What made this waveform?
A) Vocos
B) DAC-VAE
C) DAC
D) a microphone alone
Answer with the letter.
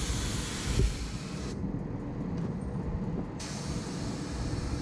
D